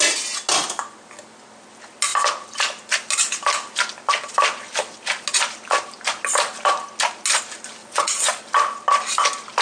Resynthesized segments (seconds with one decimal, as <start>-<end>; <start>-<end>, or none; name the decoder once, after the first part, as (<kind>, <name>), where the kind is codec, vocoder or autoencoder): 7.8-8.5 (vocoder, WaveNeXt)